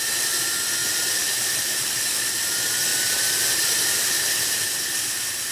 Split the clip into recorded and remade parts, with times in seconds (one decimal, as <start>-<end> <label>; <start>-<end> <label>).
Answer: 0.0-0.8 recorded; 0.8-1.9 remade; 1.9-2.9 recorded; 2.9-5.0 remade; 5.0-5.5 recorded